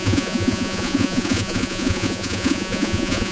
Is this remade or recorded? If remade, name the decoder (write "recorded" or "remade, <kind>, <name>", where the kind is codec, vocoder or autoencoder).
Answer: remade, vocoder, Vocos